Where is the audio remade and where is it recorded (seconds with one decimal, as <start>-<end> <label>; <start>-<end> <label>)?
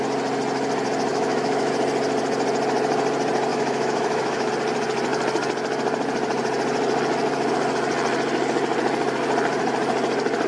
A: 0.0-1.1 recorded; 1.1-1.7 remade; 1.7-3.5 recorded; 3.5-4.5 remade; 4.5-10.5 recorded